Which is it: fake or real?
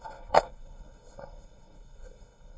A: fake